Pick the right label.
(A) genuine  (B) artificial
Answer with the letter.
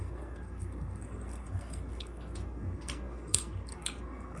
B